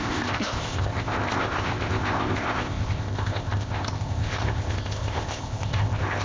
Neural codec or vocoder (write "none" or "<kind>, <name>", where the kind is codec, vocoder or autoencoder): codec, ZipCodec